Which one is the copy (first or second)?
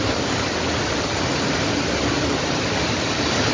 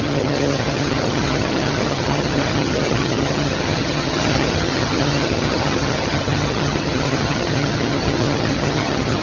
second